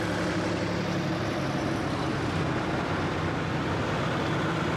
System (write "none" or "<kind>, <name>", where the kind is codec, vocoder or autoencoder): none